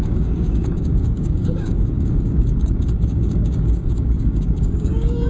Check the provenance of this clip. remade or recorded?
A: remade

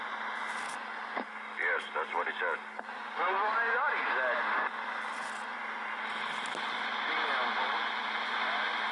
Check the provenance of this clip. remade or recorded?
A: recorded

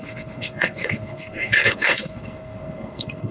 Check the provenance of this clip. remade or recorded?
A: remade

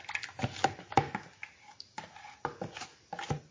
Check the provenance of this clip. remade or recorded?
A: recorded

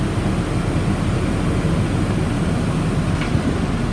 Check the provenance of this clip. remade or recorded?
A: recorded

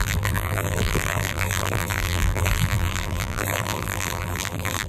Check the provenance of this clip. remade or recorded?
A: remade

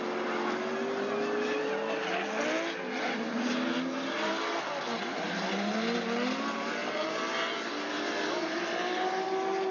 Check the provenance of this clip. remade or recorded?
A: recorded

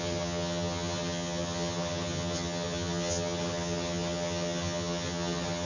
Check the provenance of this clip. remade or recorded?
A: remade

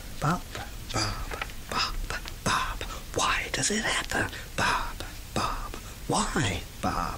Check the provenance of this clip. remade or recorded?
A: remade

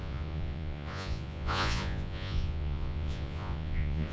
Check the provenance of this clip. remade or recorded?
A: remade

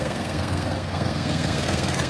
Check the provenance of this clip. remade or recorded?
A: remade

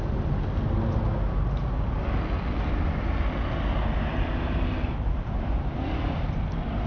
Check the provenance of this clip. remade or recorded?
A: recorded